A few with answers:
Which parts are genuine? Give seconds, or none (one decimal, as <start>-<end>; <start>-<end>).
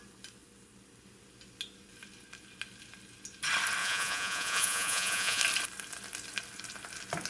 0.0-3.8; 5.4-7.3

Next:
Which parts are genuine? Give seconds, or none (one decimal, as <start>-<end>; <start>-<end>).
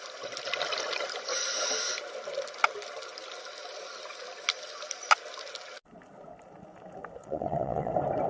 0.0-7.2; 7.9-8.3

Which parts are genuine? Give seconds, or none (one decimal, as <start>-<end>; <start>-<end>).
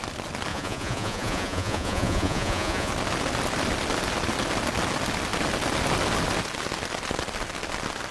0.0-0.5; 2.9-8.1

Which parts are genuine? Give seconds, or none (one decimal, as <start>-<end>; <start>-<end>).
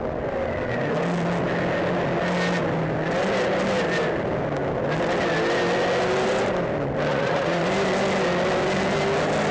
0.0-7.1; 7.6-9.5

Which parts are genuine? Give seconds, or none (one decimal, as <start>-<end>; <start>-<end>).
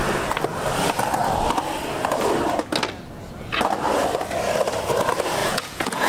0.0-5.4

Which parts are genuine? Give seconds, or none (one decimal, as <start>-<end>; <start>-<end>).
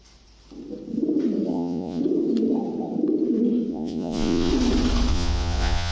0.0-1.5; 2.0-3.7; 4.5-5.1